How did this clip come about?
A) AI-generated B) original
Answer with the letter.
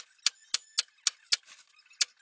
B